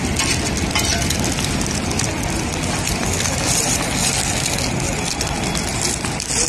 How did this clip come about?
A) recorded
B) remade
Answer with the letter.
A